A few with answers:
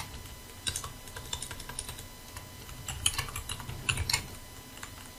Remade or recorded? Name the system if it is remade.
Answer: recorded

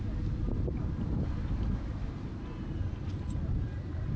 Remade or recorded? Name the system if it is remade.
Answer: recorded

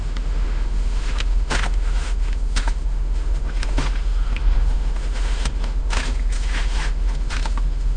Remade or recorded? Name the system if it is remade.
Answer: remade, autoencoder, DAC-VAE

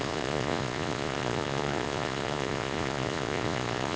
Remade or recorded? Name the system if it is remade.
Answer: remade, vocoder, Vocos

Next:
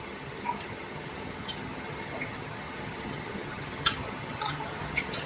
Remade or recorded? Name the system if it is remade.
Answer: remade, vocoder, HiFi-GAN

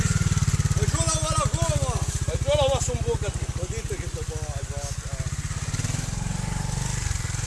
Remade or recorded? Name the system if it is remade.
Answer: recorded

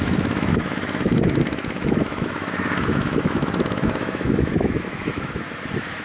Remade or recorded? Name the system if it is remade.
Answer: remade, autoencoder, DAC-VAE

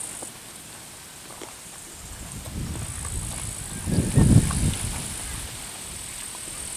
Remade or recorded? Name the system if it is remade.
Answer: recorded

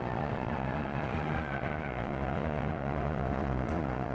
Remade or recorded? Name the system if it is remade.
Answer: remade, vocoder, Vocos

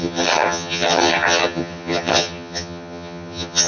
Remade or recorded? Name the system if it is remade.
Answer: remade, vocoder, HiFi-GAN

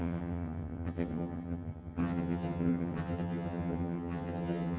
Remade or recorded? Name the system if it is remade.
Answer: remade, vocoder, HiFi-GAN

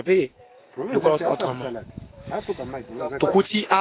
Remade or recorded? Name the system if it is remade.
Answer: remade, codec, DAC